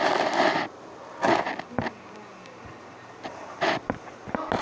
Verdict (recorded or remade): recorded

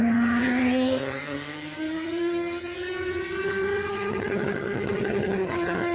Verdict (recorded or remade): remade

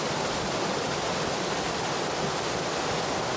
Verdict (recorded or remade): recorded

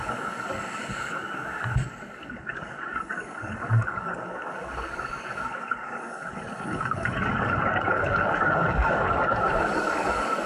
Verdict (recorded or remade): remade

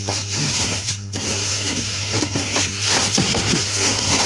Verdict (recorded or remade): remade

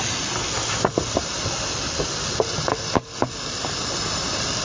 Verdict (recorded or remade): recorded